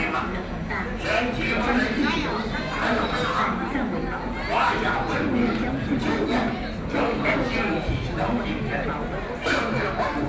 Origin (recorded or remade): recorded